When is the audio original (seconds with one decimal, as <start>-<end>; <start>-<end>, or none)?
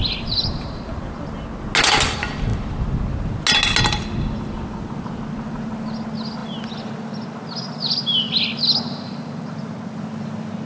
0.9-10.7